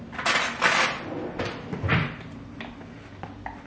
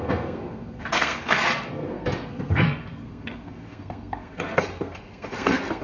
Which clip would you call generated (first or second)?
second